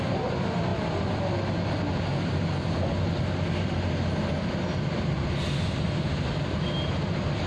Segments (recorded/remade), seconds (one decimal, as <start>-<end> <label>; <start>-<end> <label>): 0.0-7.5 recorded